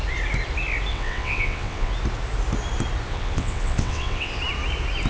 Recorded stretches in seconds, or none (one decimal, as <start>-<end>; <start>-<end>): 0.0-0.9; 1.9-3.1; 4.4-5.1